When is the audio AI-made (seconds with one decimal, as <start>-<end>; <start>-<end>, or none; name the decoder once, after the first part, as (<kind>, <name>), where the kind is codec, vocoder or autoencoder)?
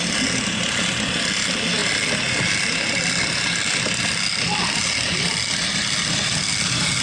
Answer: none